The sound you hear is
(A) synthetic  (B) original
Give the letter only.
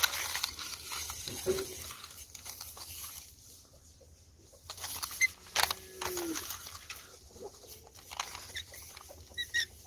B